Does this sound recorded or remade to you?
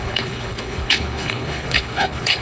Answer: remade